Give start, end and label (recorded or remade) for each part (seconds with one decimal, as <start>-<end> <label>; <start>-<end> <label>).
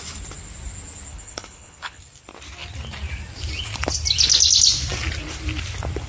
0.0-1.1 recorded; 1.1-2.0 remade; 2.0-6.1 recorded